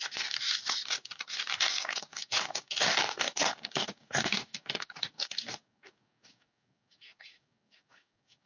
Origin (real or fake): fake